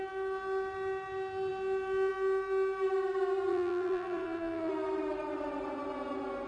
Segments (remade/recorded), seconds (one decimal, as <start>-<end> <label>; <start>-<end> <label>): 0.0-3.5 recorded; 3.5-4.7 remade; 4.7-6.5 recorded